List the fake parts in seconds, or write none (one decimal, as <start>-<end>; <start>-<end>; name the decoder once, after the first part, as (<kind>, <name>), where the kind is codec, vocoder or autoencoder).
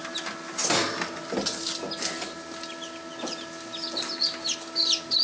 none